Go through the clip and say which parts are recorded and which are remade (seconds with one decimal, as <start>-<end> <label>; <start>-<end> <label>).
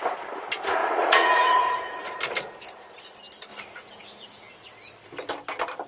0.0-0.8 recorded; 0.8-2.2 remade; 2.2-5.9 recorded